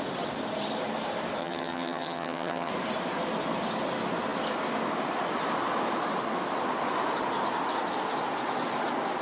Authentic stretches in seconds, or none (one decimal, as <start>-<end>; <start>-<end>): 0.0-1.4; 2.7-9.2